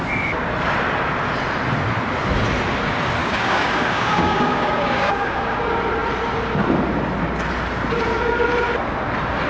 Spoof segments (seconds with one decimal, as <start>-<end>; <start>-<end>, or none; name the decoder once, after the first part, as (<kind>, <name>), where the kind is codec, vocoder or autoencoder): 3.2-5.6 (codec, DAC)